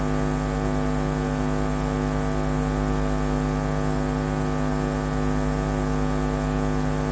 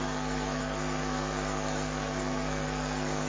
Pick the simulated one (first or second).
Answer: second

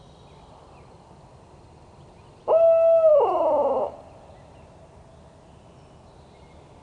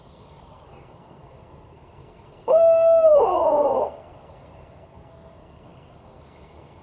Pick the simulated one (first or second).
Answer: second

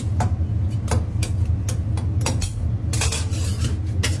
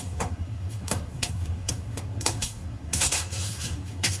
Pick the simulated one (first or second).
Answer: second